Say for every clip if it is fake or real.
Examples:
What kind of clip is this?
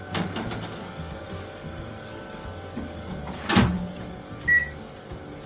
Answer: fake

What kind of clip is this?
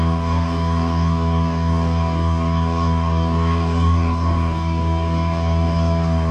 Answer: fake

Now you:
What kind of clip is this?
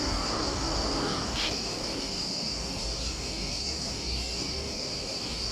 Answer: fake